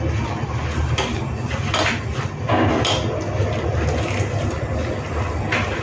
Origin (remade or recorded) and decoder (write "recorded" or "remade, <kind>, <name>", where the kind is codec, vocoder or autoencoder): recorded